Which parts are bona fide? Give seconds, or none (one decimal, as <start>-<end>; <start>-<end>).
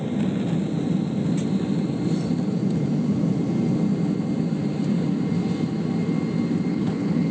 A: 0.0-6.7